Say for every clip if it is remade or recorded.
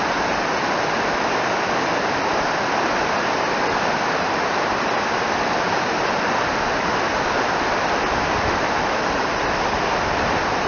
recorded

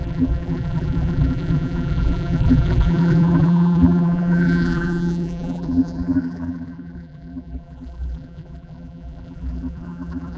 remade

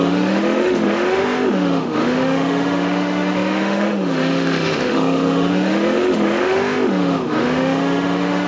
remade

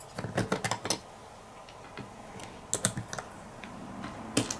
recorded